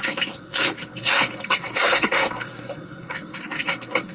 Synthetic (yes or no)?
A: yes